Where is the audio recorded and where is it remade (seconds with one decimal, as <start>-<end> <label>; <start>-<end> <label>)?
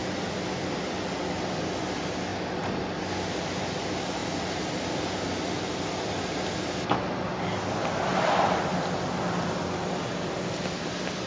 0.0-11.3 recorded